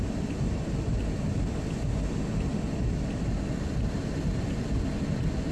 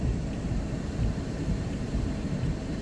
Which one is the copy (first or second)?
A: second